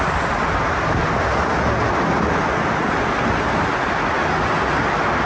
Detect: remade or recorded recorded